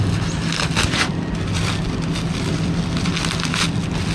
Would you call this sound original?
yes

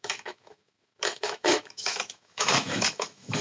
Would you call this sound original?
no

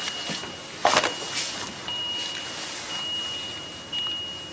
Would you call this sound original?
yes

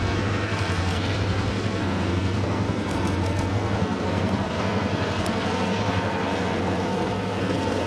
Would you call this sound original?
no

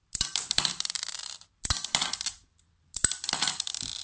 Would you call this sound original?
no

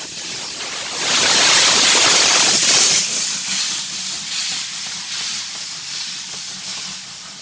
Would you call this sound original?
yes